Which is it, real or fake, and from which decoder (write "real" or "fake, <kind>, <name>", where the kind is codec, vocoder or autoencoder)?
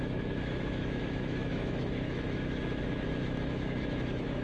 fake, autoencoder, DAC-VAE